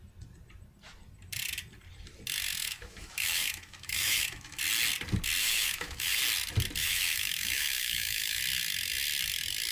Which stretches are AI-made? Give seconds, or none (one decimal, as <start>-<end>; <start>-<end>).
2.6-4.6; 5.4-6.2; 6.8-8.4